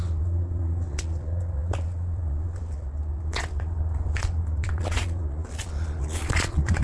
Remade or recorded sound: remade